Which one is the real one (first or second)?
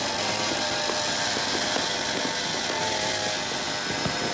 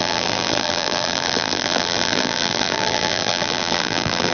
first